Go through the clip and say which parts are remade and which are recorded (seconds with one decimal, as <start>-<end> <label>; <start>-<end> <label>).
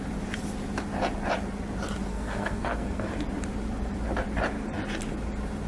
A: 0.0-2.1 recorded; 2.1-3.1 remade; 3.1-5.7 recorded